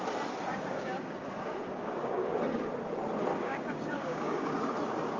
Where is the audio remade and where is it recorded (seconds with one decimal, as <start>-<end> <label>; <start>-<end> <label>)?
0.0-0.5 recorded; 0.5-2.3 remade; 2.3-3.3 recorded; 3.3-4.7 remade; 4.7-5.2 recorded